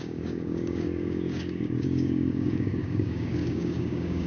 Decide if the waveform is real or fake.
fake